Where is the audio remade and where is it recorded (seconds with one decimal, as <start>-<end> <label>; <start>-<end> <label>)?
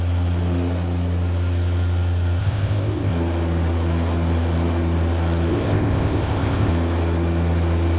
0.0-2.4 recorded; 2.4-3.1 remade; 3.1-5.5 recorded; 5.5-6.7 remade; 6.7-8.0 recorded